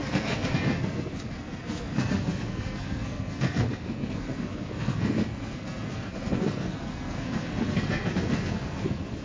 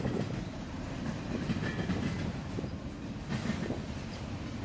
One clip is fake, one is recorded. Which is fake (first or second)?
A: first